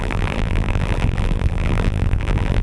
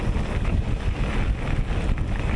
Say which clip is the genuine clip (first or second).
second